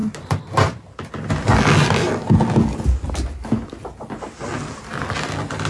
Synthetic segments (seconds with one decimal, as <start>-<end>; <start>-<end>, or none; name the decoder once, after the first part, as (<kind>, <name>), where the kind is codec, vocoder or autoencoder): 0.0-1.3 (vocoder, BigVGAN v2)